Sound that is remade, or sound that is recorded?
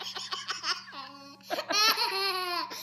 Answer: recorded